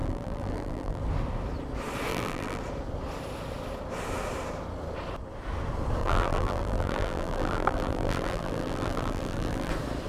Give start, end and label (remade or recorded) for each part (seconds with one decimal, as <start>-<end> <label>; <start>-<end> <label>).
0.0-1.0 remade; 1.0-2.1 recorded; 2.1-2.6 remade; 2.6-6.0 recorded; 6.0-9.7 remade; 9.7-10.1 recorded